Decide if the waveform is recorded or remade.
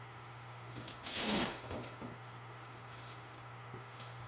remade